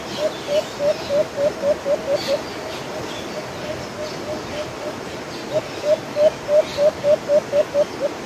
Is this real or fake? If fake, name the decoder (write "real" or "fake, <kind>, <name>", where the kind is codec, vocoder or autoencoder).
real